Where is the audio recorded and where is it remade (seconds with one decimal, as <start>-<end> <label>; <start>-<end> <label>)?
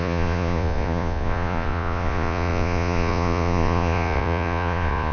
0.0-5.1 remade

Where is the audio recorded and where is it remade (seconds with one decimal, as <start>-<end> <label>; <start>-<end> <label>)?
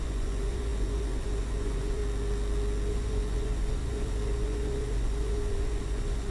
0.0-2.0 remade; 2.0-2.9 recorded; 2.9-6.3 remade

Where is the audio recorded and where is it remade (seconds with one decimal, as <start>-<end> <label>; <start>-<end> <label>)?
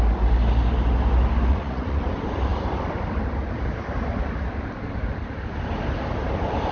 0.0-1.5 recorded; 1.5-2.0 remade; 2.0-6.7 recorded